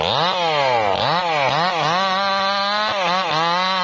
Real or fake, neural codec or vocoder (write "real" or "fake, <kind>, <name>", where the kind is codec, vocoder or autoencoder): real